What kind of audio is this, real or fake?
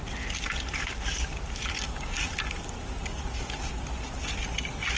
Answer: fake